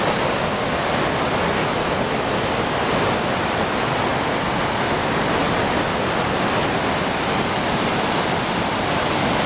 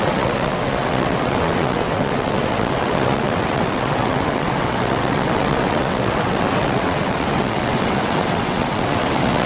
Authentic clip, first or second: first